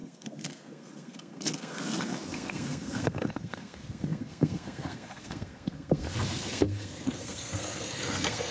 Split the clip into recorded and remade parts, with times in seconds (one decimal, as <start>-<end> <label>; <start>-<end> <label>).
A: 0.0-8.5 remade